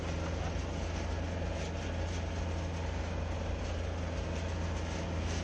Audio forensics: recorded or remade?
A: recorded